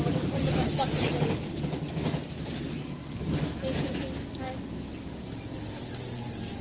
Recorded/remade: recorded